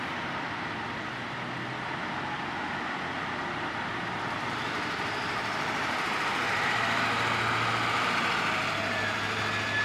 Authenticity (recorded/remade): recorded